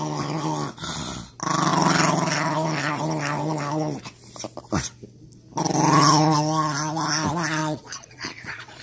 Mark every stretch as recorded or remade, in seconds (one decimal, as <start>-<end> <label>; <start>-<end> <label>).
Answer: 0.0-7.6 recorded; 7.6-8.8 remade